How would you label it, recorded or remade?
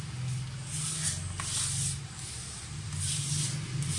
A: recorded